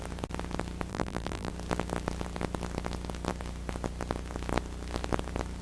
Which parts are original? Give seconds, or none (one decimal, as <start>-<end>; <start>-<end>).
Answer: 0.0-0.9; 1.5-5.6